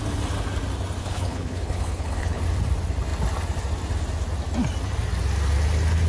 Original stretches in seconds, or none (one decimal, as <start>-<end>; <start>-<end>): 0.0-1.0; 2.4-6.1